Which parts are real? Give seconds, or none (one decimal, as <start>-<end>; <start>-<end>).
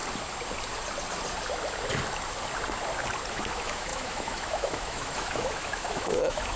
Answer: 0.0-3.3